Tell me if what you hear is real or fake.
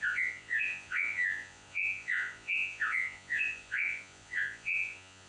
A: fake